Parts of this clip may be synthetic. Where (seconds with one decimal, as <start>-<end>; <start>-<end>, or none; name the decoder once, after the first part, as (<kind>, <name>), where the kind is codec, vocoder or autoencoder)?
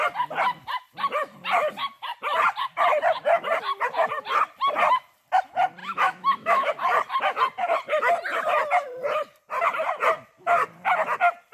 5.8-6.7 (autoencoder, DAC-VAE)